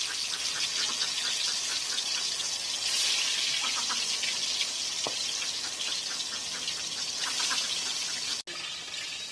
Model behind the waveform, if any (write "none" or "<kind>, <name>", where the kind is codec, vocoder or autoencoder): none